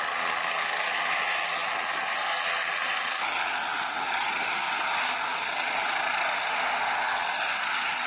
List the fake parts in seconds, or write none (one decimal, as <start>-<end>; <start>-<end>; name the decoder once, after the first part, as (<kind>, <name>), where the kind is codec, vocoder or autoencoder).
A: none